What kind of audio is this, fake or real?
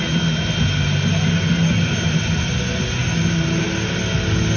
real